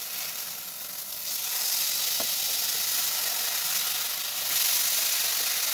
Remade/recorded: recorded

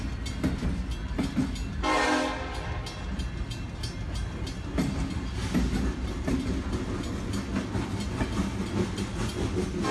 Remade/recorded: recorded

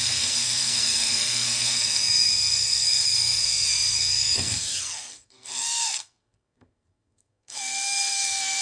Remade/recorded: remade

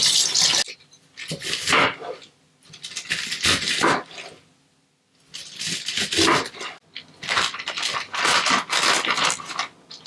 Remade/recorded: recorded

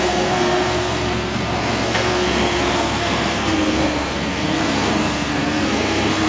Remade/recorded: remade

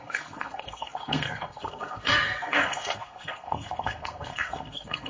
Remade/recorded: remade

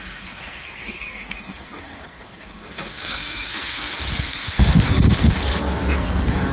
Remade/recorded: remade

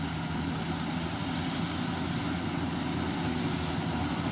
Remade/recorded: recorded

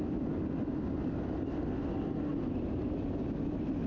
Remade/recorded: recorded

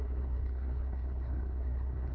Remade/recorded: remade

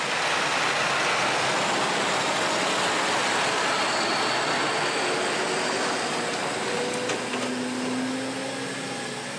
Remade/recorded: recorded